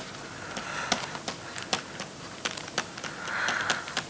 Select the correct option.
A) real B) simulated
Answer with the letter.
A